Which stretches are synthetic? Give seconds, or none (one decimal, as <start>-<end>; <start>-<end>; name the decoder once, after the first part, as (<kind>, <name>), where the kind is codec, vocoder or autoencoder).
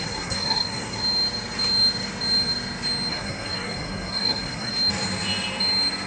0.0-1.0 (codec, SNAC); 3.1-4.7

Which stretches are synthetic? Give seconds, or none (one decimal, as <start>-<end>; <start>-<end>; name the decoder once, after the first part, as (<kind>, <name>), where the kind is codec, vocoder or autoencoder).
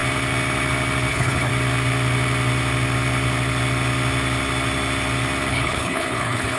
1.1-1.5 (codec, HILCodec); 5.5-6.6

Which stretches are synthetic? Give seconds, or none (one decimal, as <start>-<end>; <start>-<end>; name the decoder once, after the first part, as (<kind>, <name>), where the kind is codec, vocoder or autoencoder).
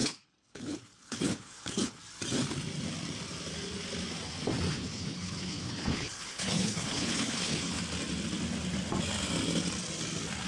0.0-2.0 (codec, HILCodec); 4.7-7.8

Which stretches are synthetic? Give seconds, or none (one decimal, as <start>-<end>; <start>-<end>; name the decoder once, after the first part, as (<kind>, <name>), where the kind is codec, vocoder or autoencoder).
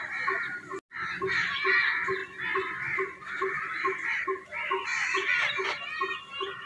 none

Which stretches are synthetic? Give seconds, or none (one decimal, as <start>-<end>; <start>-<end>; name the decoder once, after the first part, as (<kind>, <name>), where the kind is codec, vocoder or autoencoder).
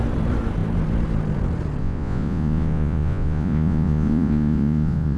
1.8-5.2 (vocoder, Vocos)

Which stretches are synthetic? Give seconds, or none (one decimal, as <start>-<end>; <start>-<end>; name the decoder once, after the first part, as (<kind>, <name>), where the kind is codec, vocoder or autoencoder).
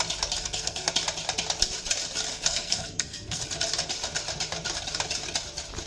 0.4-0.9 (codec, SNAC); 2.3-3.4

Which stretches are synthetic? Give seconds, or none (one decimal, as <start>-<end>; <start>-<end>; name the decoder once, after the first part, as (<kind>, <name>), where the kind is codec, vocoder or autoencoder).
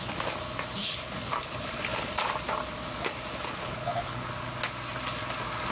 0.8-2.1 (codec, HILCodec); 3.3-4.3